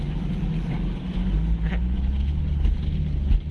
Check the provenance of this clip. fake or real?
real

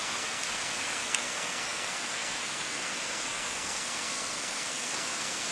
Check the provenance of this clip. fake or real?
fake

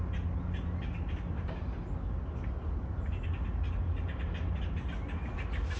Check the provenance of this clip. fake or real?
real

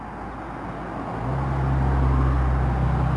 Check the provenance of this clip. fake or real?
real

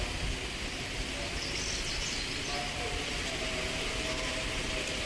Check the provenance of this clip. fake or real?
real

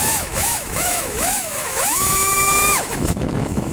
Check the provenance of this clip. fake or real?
fake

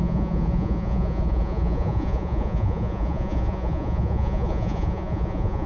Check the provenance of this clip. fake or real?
fake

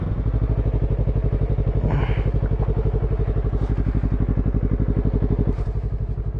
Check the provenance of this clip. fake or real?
real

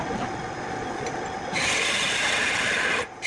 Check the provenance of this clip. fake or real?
real